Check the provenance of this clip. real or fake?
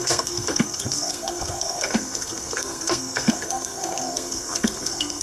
fake